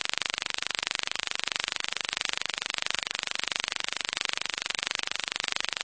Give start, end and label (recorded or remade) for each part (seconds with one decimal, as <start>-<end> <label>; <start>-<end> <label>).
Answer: 0.0-5.8 recorded